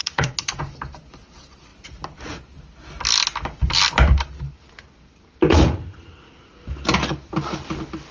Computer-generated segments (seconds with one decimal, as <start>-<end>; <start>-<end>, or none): 0.0-0.6; 5.5-6.5